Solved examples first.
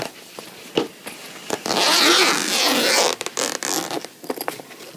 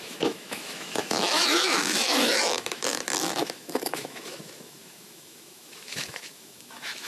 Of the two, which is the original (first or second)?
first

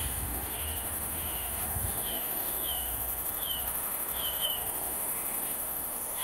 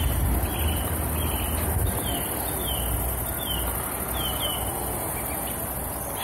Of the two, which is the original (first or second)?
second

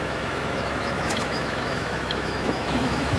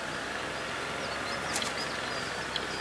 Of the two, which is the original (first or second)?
second